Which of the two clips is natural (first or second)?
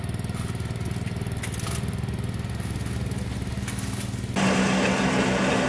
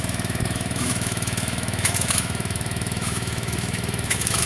first